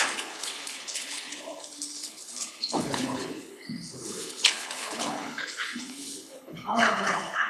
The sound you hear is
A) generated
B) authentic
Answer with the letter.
A